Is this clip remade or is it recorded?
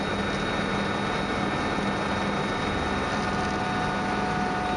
recorded